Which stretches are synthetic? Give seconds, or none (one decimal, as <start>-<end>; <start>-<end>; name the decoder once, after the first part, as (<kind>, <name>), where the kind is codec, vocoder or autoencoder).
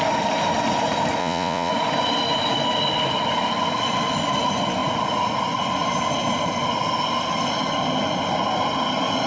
1.2-1.7 (vocoder, Vocos)